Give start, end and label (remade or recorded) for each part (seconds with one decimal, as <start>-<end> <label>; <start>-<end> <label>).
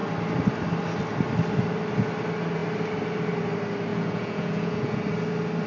0.0-3.9 recorded; 3.9-5.0 remade; 5.0-5.7 recorded